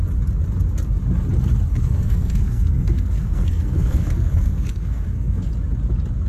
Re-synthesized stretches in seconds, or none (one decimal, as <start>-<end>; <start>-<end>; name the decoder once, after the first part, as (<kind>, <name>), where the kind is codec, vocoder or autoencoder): 1.7-5.5 (codec, SNAC)